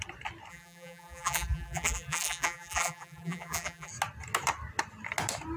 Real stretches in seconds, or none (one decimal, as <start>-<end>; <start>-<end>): 0.0-0.5; 3.9-5.6